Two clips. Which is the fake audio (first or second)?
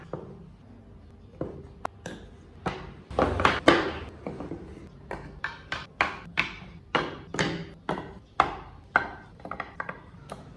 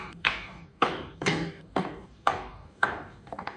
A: second